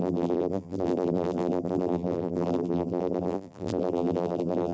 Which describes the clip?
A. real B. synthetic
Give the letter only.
B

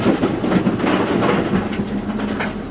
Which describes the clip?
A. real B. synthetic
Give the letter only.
A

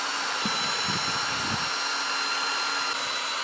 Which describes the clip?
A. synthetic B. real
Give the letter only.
A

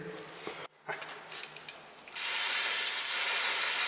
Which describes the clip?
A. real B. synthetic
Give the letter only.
A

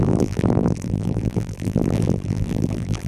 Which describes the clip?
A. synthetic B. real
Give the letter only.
A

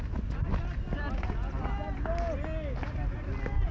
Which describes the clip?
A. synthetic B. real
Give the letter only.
B